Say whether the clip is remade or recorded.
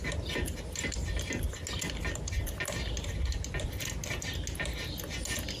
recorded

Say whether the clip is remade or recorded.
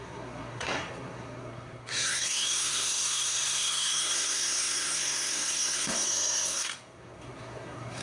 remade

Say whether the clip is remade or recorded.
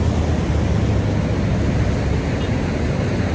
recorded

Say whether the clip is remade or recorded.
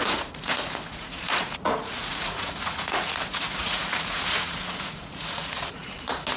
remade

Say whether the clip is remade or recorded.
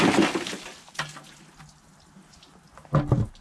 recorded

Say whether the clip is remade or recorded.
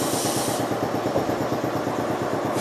recorded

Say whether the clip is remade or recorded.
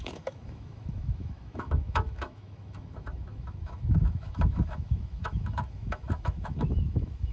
remade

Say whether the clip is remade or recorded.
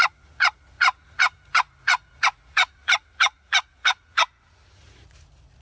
remade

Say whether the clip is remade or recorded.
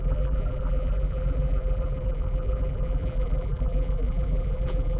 remade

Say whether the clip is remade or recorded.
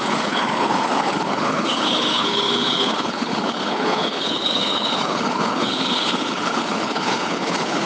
remade